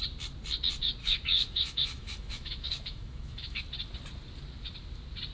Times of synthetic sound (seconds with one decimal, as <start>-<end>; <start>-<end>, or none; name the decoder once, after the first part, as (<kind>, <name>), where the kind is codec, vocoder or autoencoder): 1.0-3.6 (autoencoder, DAC-VAE)